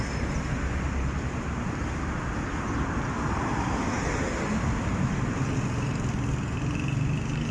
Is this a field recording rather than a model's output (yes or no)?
yes